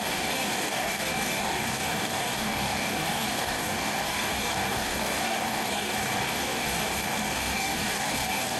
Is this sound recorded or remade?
remade